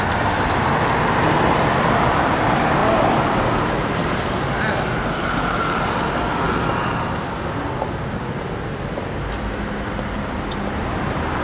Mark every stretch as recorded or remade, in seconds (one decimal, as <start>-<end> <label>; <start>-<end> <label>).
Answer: 0.0-11.4 recorded